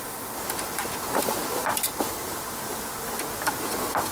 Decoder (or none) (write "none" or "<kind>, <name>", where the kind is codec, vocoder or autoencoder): none